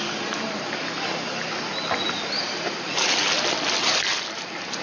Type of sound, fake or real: real